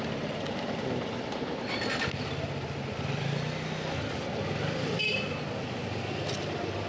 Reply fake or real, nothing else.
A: real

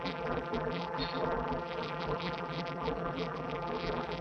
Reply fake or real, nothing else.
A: fake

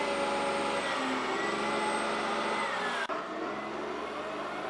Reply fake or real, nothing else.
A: real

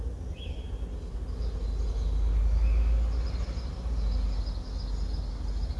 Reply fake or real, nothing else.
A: real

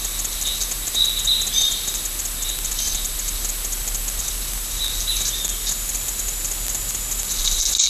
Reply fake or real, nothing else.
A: real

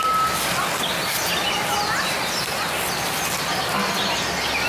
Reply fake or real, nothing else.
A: real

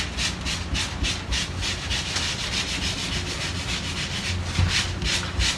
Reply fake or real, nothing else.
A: real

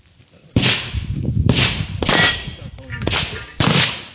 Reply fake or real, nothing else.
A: fake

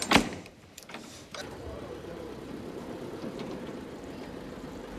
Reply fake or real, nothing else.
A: fake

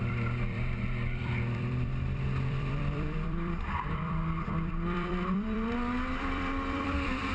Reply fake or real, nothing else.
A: fake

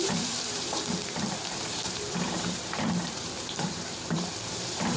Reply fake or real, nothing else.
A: fake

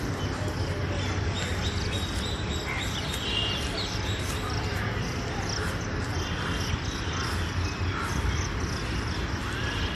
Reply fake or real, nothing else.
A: real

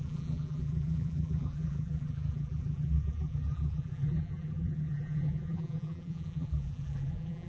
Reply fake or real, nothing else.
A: fake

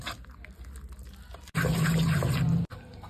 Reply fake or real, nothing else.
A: real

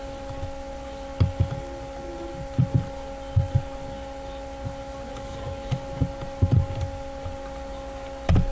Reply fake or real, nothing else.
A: real